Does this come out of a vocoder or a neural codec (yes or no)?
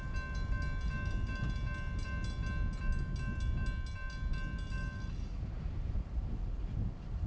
no